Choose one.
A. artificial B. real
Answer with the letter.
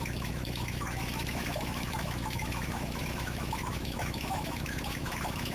A